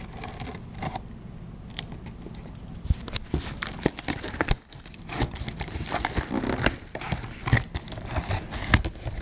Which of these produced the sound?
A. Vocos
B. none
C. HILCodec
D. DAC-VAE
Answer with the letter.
B